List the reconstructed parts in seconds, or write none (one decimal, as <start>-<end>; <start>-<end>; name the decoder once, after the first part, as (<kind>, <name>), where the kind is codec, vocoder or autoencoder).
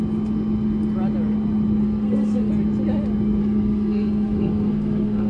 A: 1.8-2.5 (codec, SNAC); 3.4-5.3